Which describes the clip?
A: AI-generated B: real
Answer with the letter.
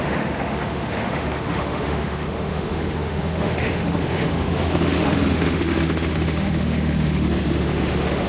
A